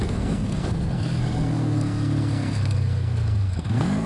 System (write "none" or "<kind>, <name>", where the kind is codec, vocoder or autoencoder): codec, SNAC